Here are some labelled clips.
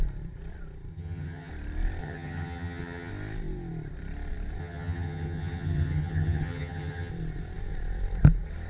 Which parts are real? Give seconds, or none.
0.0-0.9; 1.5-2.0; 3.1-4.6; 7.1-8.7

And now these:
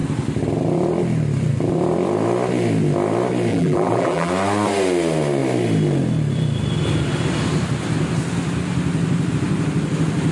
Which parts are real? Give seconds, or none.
0.0-3.5; 4.3-10.3

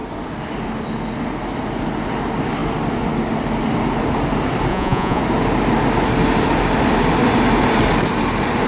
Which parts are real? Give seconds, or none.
0.0-4.7; 5.2-8.7

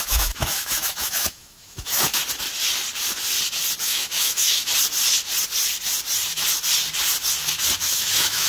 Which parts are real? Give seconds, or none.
2.2-3.8; 4.7-7.8

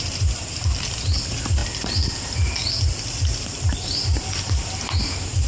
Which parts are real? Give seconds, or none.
0.0-1.6; 3.2-5.5